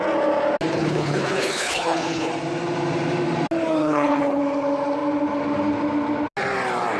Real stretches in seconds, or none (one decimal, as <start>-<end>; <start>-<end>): 0.0-0.7; 2.3-3.8; 4.4-7.0